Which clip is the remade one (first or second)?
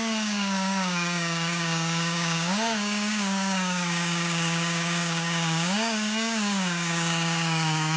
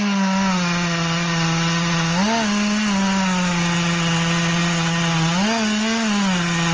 first